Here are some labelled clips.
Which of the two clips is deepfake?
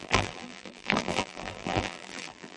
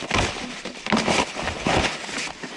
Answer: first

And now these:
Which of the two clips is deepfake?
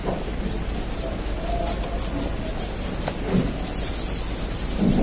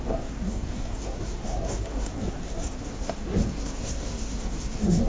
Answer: second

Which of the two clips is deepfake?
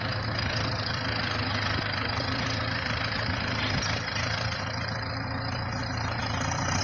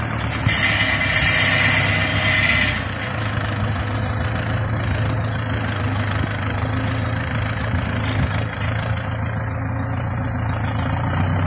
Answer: first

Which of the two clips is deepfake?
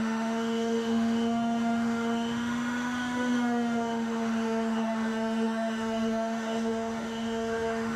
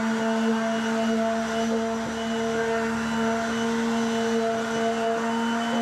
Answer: first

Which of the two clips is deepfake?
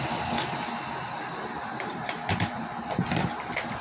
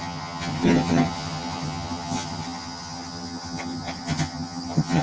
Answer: second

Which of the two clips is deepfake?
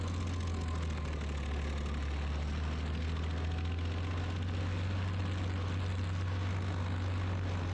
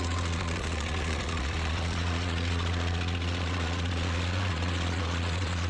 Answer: second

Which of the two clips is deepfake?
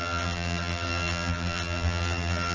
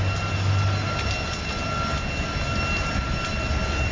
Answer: first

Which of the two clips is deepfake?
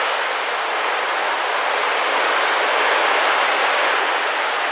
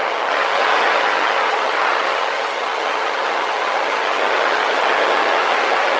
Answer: second